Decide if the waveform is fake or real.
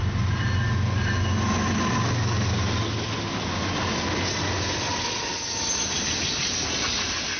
real